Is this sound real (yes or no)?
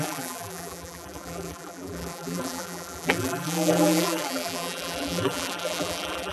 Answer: no